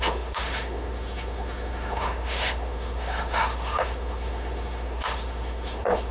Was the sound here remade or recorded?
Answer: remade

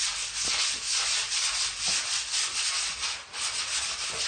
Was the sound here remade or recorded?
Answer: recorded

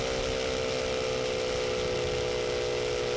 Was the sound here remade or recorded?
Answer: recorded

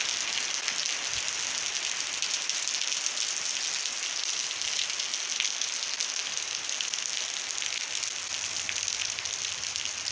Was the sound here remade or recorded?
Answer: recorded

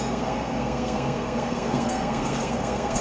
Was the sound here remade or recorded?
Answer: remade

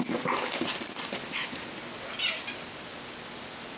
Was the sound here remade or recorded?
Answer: recorded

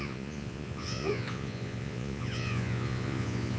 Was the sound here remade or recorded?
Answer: remade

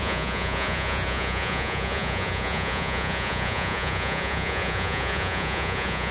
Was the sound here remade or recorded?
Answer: remade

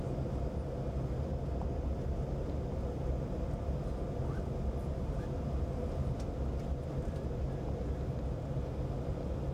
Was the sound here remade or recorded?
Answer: recorded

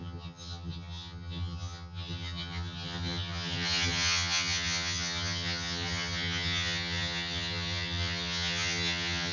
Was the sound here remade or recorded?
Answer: remade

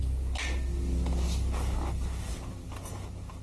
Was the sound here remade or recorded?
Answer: recorded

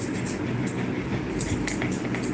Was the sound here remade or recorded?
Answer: recorded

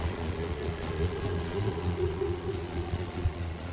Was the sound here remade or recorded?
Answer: remade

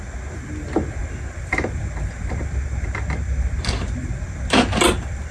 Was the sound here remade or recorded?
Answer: recorded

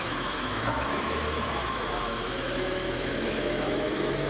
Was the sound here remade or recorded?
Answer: remade